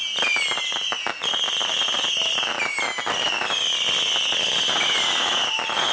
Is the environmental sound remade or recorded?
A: recorded